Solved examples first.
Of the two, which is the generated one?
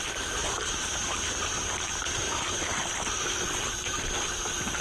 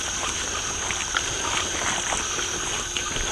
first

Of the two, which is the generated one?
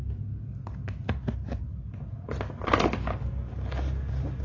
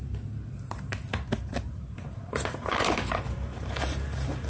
second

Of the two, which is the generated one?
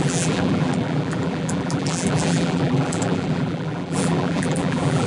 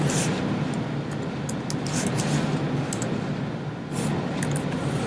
first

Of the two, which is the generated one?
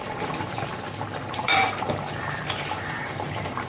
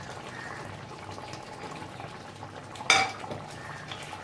first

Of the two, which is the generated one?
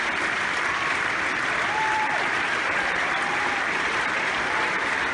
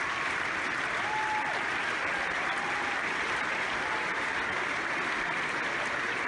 first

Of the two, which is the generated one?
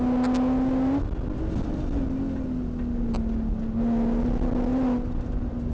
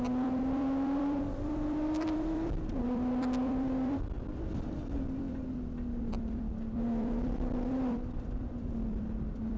second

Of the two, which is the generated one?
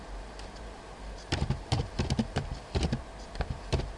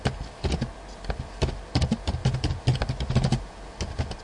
first